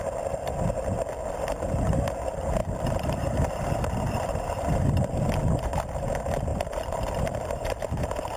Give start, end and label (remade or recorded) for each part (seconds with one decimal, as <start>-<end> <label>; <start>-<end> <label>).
0.0-2.6 recorded; 2.6-5.6 remade; 5.6-6.5 recorded; 6.5-8.0 remade; 8.0-8.4 recorded